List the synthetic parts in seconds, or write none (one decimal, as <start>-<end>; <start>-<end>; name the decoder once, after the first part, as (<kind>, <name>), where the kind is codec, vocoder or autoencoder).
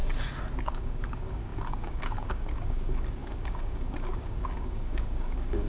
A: 0.7-5.7 (codec, DAC)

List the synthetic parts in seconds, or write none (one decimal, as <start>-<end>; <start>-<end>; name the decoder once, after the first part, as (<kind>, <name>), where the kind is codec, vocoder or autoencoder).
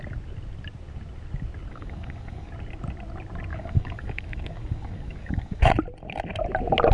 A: 1.7-2.5 (codec, DAC); 3.5-5.7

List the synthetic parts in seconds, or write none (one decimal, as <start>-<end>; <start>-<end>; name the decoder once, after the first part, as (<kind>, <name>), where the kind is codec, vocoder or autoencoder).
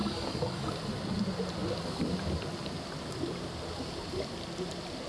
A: 0.0-0.7 (codec, DAC)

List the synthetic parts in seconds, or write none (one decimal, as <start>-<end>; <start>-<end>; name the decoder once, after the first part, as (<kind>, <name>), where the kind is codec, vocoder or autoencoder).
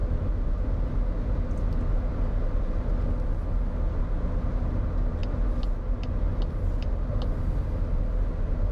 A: none